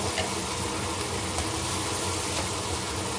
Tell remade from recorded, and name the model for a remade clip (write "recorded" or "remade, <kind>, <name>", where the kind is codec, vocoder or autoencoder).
recorded